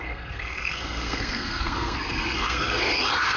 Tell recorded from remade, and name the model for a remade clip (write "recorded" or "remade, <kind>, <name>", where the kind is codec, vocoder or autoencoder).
remade, codec, SNAC